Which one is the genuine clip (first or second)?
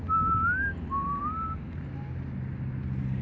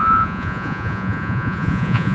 first